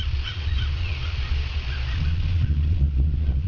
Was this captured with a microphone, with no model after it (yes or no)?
no